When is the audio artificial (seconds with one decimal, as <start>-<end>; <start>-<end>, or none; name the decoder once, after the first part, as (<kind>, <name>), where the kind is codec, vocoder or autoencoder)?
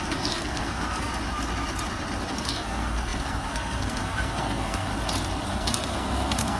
0.0-1.1 (codec, SNAC); 2.3-4.9; 5.5-6.6